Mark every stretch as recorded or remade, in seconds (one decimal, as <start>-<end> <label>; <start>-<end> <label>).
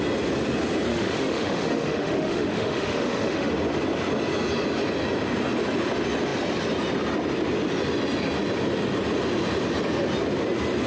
0.0-0.9 recorded; 0.9-3.5 remade; 3.5-10.9 recorded